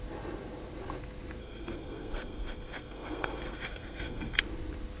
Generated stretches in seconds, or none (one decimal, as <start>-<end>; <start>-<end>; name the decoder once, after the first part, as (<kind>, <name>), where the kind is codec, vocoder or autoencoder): 1.4-4.4 (codec, SNAC)